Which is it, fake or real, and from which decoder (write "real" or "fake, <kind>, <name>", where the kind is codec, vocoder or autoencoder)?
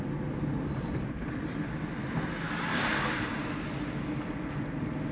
real